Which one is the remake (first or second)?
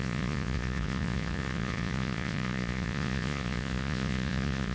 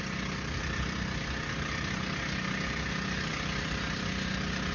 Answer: first